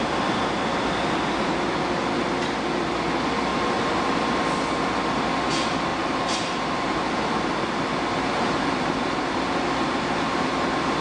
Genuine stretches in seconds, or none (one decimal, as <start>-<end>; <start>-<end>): 0.0-3.5; 4.4-5.9; 10.5-11.0

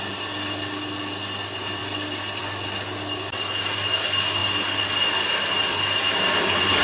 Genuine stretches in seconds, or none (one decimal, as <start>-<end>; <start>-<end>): 0.0-1.8; 2.4-4.4; 5.6-6.8